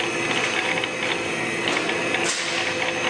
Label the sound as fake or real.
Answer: real